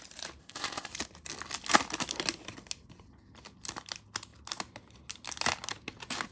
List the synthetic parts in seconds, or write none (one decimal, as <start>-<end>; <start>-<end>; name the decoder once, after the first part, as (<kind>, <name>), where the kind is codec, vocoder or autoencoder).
0.4-0.9 (codec, ZipCodec)